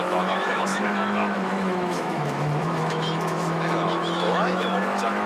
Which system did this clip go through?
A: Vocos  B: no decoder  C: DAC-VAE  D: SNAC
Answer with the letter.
C